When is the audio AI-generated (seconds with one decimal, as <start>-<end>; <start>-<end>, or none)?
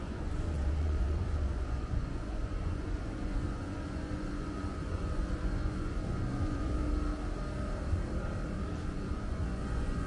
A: 0.0-6.8; 8.9-10.1